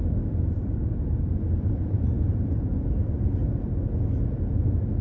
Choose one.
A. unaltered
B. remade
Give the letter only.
A